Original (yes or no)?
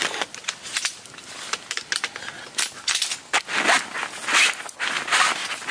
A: yes